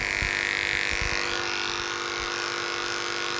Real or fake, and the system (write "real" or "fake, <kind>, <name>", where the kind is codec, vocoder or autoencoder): real